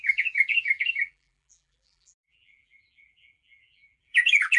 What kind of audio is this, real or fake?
fake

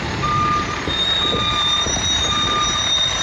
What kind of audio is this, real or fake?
fake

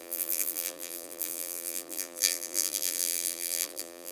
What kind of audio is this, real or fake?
fake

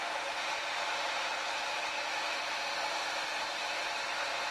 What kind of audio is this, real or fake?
fake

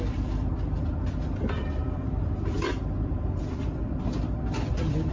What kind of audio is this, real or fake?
fake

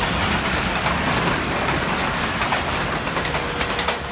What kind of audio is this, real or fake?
real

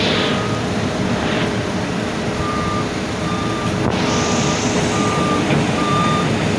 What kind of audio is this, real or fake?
fake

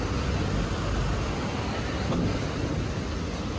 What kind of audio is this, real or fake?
real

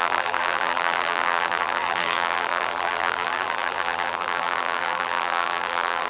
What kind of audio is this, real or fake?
fake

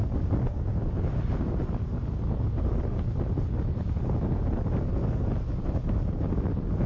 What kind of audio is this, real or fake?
real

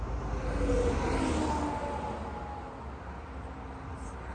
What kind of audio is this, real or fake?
real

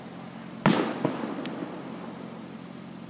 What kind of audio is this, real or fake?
real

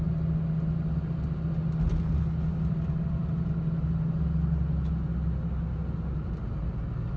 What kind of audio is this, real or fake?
real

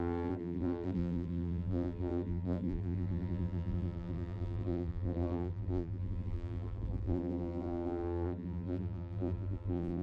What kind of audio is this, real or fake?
fake